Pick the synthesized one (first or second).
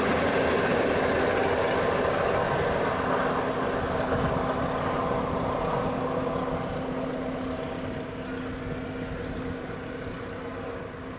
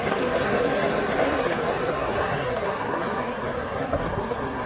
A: second